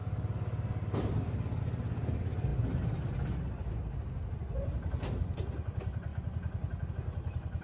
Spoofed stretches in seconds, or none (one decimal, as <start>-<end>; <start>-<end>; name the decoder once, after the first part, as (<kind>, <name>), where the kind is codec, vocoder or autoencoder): none